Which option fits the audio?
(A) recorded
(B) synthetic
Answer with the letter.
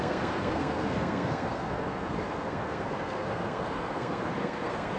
B